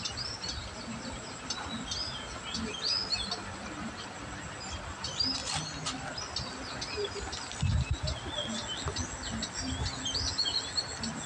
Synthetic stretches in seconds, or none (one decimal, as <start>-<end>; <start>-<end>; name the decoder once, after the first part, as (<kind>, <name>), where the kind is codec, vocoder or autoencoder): none